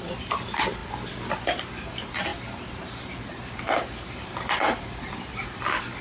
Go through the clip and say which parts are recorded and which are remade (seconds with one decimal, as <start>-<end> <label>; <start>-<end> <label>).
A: 0.0-6.0 recorded